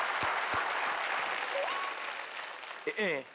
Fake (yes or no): no